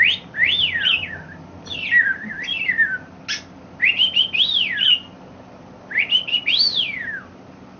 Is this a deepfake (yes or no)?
no